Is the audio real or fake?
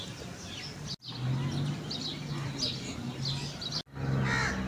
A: real